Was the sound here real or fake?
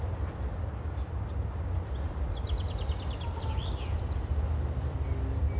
real